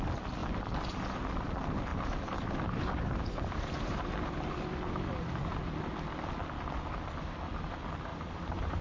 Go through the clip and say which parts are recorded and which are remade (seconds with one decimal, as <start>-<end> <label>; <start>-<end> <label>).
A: 0.0-1.9 recorded; 1.9-4.1 remade; 4.1-8.1 recorded; 8.1-8.8 remade